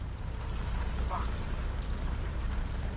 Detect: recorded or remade remade